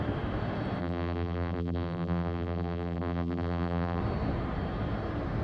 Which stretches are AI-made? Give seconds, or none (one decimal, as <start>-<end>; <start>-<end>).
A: 0.8-4.0